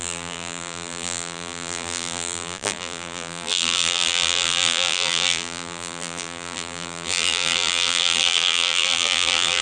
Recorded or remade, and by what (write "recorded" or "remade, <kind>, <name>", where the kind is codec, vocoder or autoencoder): remade, vocoder, BigVGAN v2